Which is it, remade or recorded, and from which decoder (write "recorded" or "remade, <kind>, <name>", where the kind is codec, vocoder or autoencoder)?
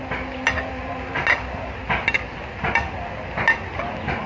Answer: recorded